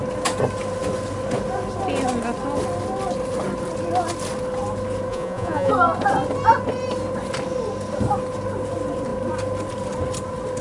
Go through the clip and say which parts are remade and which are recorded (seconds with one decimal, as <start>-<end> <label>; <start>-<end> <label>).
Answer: 0.0-5.1 recorded; 5.1-5.7 remade; 5.7-10.6 recorded